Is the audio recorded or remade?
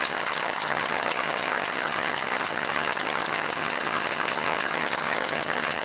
remade